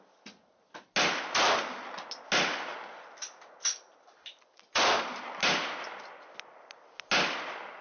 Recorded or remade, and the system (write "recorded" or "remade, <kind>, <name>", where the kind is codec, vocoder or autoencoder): recorded